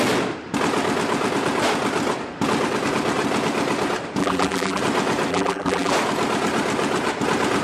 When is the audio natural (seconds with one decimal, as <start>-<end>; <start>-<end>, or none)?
0.0-4.2; 4.8-5.3; 5.9-7.6